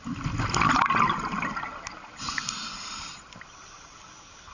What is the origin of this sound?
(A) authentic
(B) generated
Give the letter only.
A